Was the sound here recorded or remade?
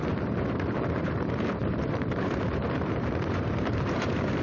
remade